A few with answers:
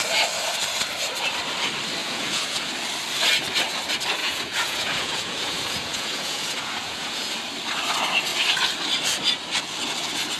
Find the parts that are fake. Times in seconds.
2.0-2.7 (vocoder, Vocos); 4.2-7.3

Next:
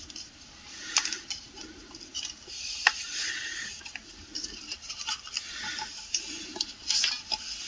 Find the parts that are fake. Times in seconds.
none

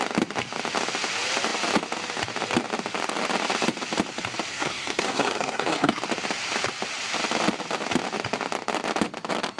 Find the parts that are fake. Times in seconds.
4.5-6.0 (codec, SNAC)

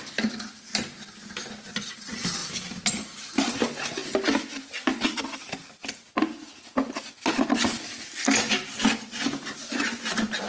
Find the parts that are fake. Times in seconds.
none

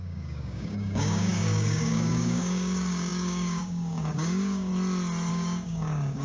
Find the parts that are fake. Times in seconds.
0.0-4.7 (codec, DAC); 5.3-6.2